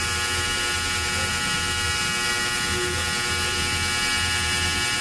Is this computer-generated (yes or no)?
no